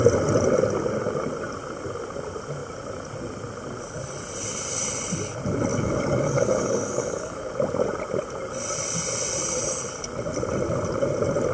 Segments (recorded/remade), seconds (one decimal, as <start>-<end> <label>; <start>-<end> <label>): 0.0-5.7 recorded; 5.7-7.5 remade; 7.5-11.5 recorded